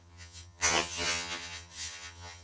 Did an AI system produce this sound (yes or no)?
yes